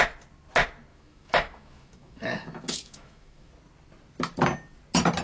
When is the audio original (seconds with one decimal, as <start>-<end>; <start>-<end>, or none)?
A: 0.0-0.9; 3.5-5.2